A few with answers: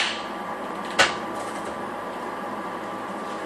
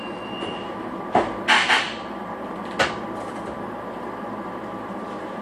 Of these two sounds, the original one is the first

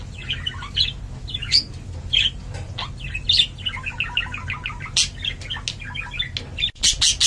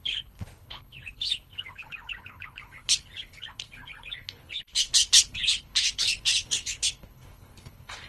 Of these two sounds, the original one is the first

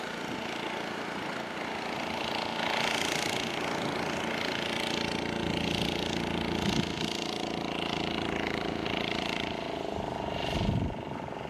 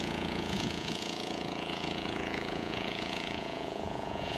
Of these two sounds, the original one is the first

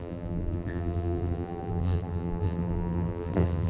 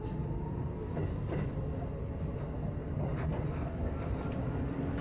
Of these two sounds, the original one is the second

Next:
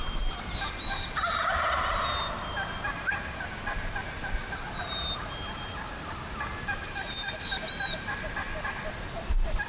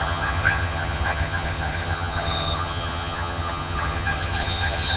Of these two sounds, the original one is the first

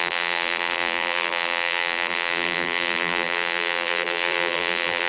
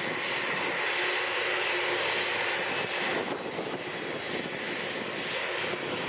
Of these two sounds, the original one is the second